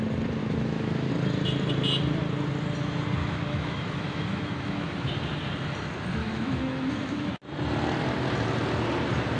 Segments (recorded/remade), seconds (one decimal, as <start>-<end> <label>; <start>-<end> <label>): 0.0-0.4 recorded; 0.4-1.1 remade; 1.1-3.2 recorded; 3.2-5.1 remade; 5.1-6.2 recorded; 6.2-7.3 remade; 7.3-9.4 recorded